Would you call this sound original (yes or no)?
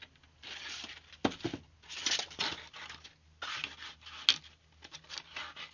yes